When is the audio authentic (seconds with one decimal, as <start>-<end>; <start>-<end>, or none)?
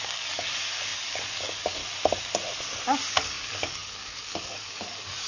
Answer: 1.8-3.1